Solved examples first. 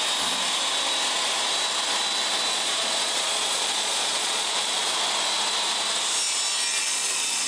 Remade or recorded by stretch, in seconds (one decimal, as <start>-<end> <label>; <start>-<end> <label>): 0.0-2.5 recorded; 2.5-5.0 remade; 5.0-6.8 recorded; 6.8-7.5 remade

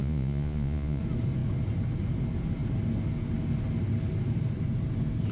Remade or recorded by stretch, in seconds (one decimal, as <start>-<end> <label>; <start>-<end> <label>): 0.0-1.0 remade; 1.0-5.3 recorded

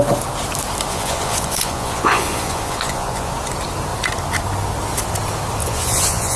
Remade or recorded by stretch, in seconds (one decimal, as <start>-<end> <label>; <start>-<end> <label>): 0.0-0.9 recorded; 0.9-3.3 remade; 3.3-5.6 recorded; 5.6-6.4 remade